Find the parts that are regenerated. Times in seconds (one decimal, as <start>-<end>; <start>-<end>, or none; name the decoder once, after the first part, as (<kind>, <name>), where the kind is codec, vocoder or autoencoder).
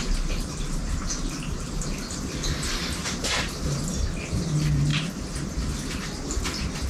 0.8-1.7 (vocoder, BigVGAN v2); 3.0-3.8; 4.9-5.6